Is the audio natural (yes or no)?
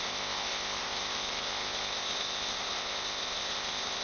no